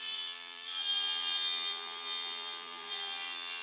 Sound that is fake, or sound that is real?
fake